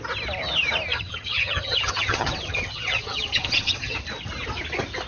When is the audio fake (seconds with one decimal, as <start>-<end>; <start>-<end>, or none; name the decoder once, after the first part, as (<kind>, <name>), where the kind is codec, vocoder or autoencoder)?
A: 0.9-4.0 (vocoder, HiFi-GAN)